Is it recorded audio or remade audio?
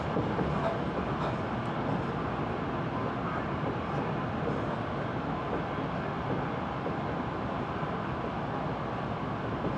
recorded